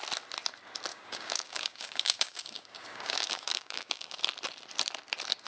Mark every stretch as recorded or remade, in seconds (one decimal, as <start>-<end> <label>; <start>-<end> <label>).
0.0-0.9 recorded; 0.9-4.2 remade; 4.2-5.5 recorded

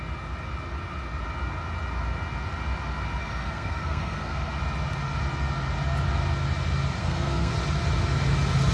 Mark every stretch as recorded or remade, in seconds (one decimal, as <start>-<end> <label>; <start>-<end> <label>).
0.0-3.2 recorded; 3.2-4.5 remade; 4.5-7.0 recorded; 7.0-7.5 remade; 7.5-8.7 recorded

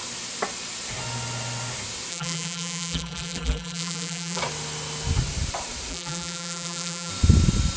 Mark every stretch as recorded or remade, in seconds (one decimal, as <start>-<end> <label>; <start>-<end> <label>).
0.0-2.1 recorded; 2.1-4.4 remade; 4.4-5.9 recorded; 5.9-7.1 remade; 7.1-7.8 recorded

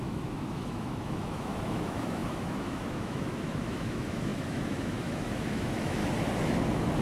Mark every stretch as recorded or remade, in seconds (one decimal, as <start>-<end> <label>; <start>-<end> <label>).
0.0-6.0 remade; 6.0-7.0 recorded

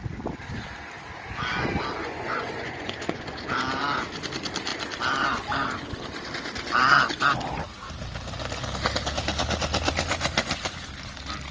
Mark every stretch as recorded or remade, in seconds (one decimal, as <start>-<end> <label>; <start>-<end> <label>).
0.0-2.0 recorded; 2.0-3.5 remade; 3.5-11.5 recorded